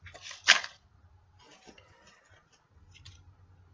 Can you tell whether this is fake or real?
real